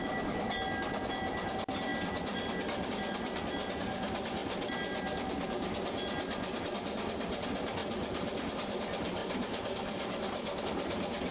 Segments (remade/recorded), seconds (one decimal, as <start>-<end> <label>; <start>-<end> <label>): 0.0-11.3 recorded